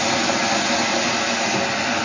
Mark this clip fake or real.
real